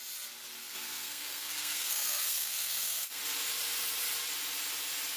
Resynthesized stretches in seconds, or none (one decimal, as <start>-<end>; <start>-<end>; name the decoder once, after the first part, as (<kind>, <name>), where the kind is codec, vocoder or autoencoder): 0.6-3.2 (codec, SNAC)